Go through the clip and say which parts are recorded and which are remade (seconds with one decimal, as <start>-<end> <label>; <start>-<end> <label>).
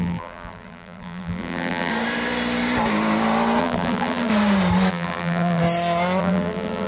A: 0.0-1.9 remade; 1.9-3.6 recorded; 3.6-4.3 remade; 4.3-4.9 recorded; 4.9-5.6 remade; 5.6-6.2 recorded; 6.2-6.9 remade